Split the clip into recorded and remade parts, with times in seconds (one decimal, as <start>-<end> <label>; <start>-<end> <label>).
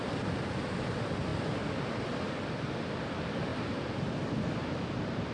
0.0-5.3 recorded